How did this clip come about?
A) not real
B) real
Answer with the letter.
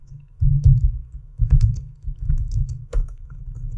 A